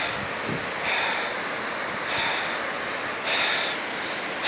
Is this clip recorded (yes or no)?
yes